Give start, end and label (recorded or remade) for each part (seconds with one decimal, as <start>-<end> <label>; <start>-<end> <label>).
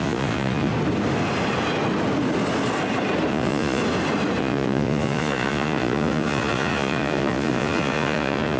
0.0-0.7 remade; 0.7-3.3 recorded; 3.3-3.8 remade; 3.8-4.4 recorded; 4.4-8.6 remade